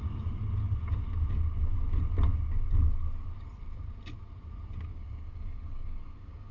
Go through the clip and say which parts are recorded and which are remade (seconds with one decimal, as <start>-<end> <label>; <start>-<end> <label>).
0.0-4.9 recorded; 4.9-6.5 remade